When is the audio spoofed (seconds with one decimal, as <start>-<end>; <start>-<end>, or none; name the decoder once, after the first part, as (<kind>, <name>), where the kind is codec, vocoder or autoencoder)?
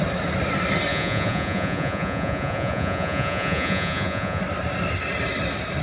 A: 0.9-4.4 (vocoder, Vocos)